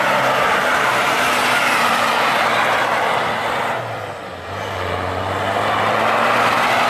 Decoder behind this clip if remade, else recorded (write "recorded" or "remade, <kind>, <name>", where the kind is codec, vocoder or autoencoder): recorded